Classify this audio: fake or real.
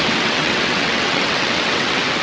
fake